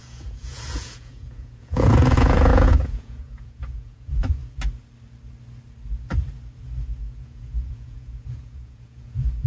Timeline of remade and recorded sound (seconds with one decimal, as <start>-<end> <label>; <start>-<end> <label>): 0.0-4.4 remade; 4.4-7.0 recorded; 7.0-9.5 remade